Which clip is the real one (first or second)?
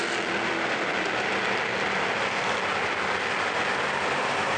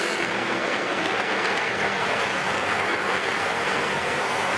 first